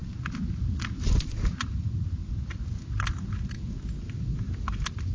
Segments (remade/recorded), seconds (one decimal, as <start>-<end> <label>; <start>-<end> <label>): 0.0-5.1 recorded